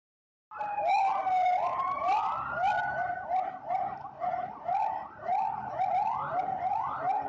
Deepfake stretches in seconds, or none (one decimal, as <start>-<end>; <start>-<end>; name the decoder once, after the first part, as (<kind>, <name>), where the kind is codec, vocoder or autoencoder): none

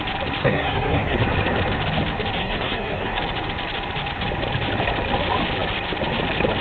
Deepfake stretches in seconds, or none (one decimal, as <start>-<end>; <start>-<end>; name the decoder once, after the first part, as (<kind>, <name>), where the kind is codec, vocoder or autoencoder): 0.4-1.2 (codec, SNAC); 2.4-3.2

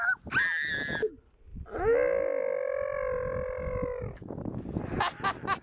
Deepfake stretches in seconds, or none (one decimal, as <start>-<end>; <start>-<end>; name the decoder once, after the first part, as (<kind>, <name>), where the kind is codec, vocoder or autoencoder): none